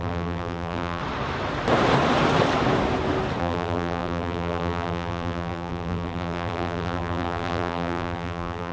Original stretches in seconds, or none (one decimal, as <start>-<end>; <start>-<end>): 1.0-3.4